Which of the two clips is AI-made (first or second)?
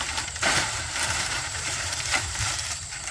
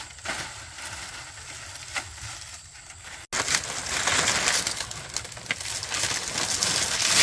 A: first